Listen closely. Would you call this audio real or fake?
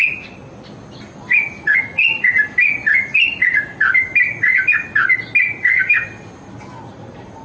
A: real